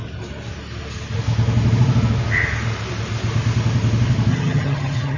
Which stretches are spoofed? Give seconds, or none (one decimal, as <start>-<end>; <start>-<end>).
4.3-5.2